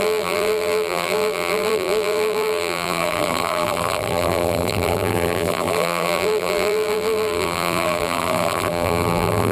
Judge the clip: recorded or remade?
remade